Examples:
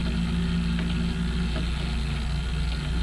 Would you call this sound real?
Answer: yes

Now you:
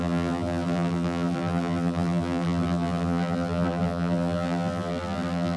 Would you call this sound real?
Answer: no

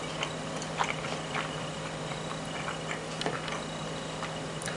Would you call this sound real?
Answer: yes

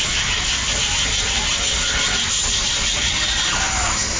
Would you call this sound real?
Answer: yes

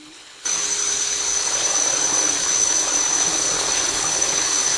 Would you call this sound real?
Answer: no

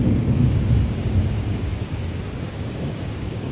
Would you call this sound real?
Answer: no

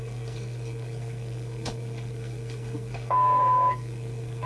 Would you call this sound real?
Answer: no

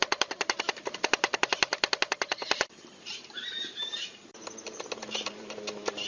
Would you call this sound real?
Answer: no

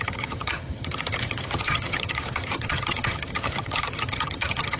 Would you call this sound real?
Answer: no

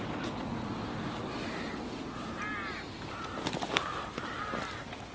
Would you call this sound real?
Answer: yes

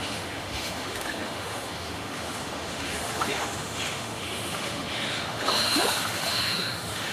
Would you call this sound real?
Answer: no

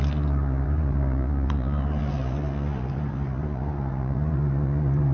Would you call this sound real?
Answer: no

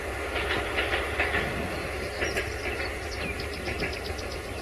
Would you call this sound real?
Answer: yes